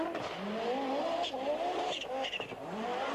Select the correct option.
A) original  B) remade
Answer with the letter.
A